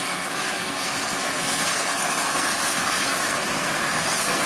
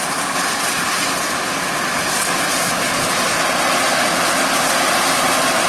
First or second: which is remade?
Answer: first